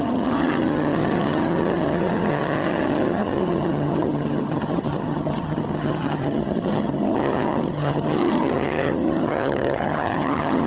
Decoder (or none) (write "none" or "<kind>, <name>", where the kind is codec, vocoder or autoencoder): vocoder, HiFi-GAN